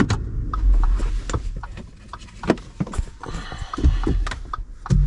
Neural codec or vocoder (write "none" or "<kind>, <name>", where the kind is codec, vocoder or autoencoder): none